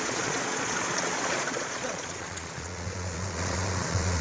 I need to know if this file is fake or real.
fake